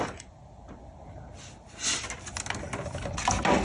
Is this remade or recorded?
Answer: recorded